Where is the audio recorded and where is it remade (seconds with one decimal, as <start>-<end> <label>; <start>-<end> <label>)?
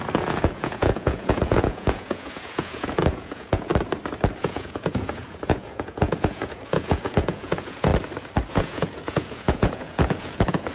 0.0-3.7 remade; 3.7-4.4 recorded; 4.4-7.9 remade; 7.9-8.5 recorded; 8.5-10.7 remade